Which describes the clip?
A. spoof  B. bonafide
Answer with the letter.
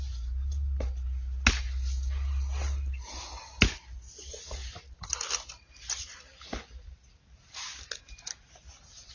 B